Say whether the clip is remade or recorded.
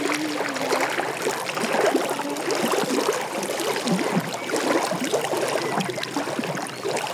recorded